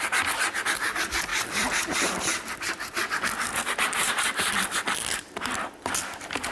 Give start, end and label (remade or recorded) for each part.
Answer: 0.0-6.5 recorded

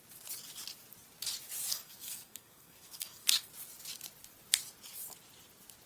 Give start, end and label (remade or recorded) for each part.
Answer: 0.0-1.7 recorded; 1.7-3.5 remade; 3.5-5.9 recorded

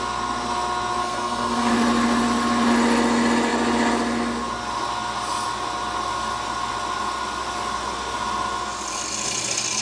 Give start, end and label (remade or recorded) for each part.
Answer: 0.0-1.0 recorded; 1.0-1.7 remade; 1.7-9.8 recorded